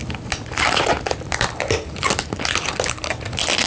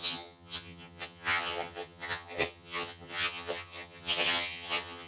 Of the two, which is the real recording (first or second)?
first